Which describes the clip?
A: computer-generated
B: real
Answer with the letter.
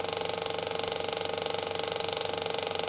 B